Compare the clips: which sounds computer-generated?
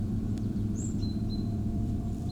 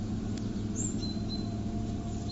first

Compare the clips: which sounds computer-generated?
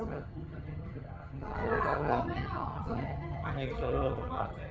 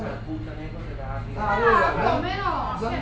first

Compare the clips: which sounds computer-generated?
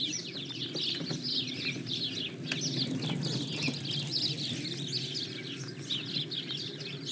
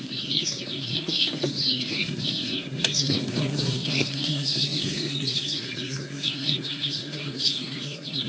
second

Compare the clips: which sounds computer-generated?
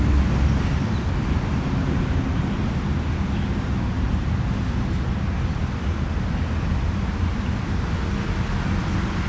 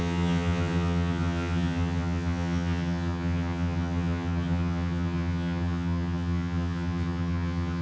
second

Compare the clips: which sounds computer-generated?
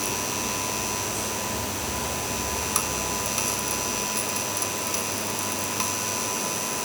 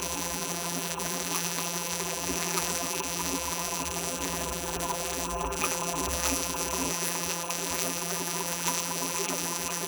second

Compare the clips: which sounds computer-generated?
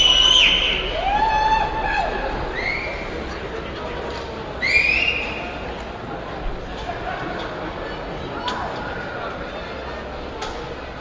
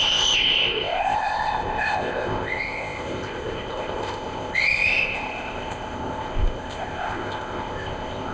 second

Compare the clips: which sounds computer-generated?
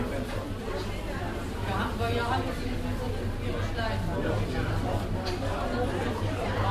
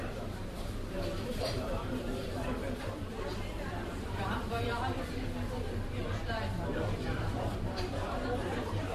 second